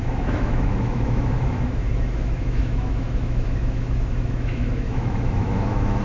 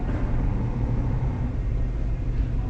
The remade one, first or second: first